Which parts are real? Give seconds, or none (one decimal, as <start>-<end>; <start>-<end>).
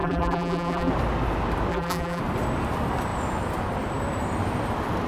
0.9-1.7; 2.2-5.1